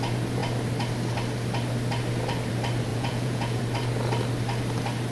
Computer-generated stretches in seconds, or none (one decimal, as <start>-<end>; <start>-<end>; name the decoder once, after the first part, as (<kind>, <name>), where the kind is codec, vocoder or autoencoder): 2.9-3.6 (vocoder, Vocos)